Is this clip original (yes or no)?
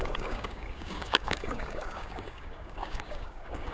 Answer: no